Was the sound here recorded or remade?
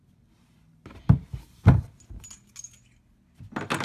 recorded